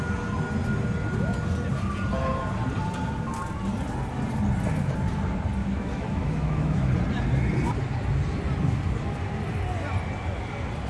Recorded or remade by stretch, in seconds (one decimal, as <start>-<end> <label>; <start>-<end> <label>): 0.0-5.6 recorded; 5.6-6.9 remade; 6.9-10.9 recorded